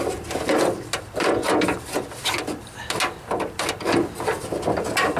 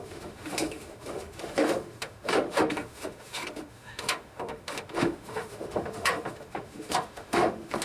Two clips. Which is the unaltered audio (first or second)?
first